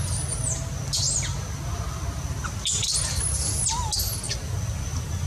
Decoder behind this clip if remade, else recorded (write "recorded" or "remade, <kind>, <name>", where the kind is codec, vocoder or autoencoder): recorded